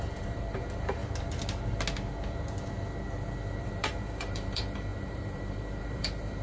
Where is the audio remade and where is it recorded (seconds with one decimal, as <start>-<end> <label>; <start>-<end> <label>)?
0.0-1.0 remade; 1.0-3.6 recorded; 3.6-6.4 remade